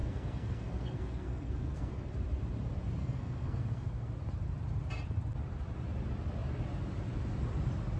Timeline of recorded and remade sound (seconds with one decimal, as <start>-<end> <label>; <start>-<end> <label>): 0.0-2.1 remade; 2.1-3.0 recorded; 3.0-4.1 remade; 4.1-8.0 recorded